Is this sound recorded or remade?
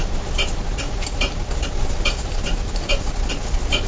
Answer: recorded